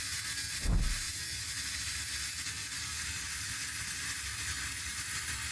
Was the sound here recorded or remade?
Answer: recorded